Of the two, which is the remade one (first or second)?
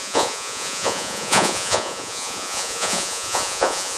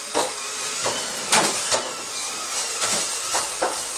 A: first